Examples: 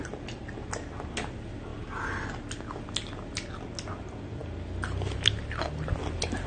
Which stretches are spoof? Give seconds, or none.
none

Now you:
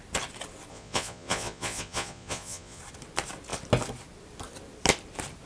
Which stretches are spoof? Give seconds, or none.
0.7-2.8

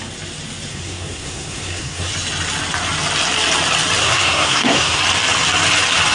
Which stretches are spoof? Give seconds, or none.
0.7-2.1; 4.0-5.0

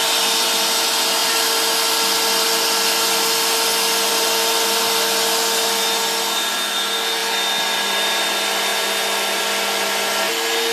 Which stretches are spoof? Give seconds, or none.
none

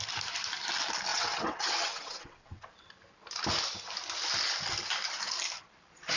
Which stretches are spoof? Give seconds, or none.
1.1-2.7

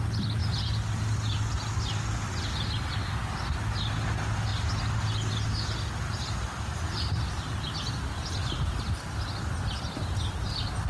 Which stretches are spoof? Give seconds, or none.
none

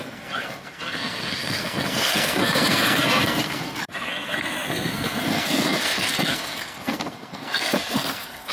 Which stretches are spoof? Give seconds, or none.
0.0-8.5

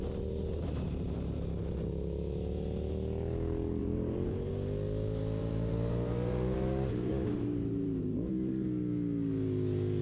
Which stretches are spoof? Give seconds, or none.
3.8-4.5; 5.4-8.3